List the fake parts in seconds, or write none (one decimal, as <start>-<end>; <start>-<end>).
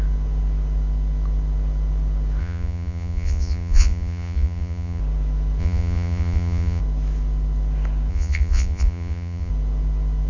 2.4-5.0; 5.6-6.8; 8.1-9.5